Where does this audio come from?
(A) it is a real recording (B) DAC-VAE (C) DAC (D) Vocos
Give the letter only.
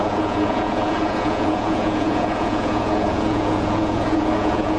D